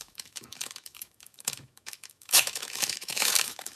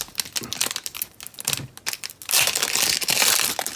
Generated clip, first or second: first